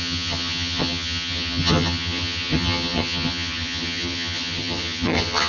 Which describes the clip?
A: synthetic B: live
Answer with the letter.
A